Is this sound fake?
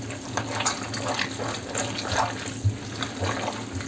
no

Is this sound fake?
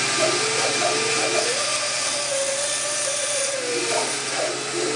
no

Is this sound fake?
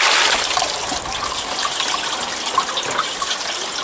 no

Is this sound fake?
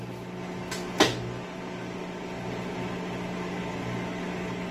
no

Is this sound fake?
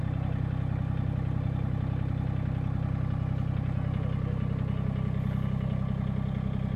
no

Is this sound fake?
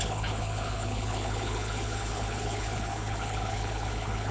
yes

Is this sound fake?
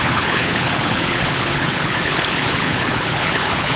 yes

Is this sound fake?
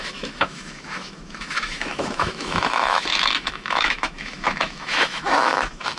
yes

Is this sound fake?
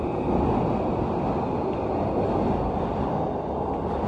no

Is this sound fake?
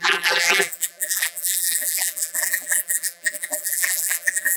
yes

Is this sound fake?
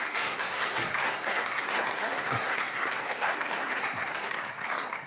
yes